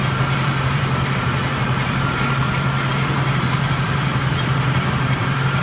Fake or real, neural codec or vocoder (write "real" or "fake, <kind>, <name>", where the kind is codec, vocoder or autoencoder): fake, vocoder, BigVGAN v2